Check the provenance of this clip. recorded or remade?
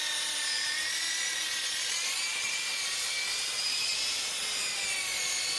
recorded